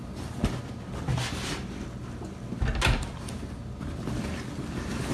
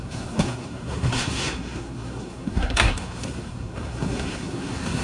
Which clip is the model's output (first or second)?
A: second